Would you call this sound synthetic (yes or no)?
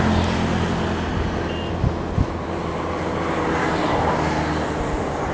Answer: no